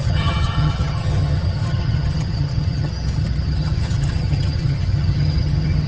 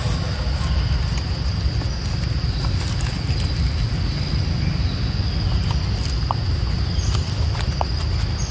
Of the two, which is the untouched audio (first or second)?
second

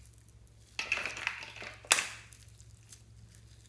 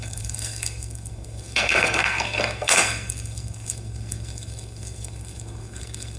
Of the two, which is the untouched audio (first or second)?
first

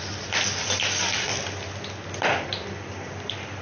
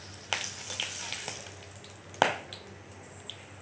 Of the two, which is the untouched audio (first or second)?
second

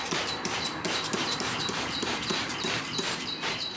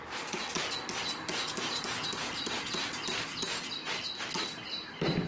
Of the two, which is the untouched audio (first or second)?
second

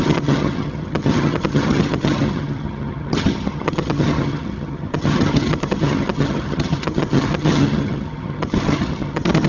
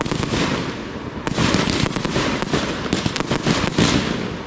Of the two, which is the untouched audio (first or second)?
second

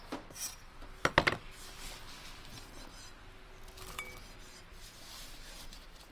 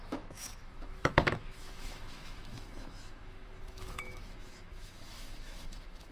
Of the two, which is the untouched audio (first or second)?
first